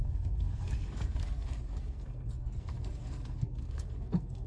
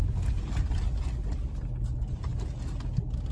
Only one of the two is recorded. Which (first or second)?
second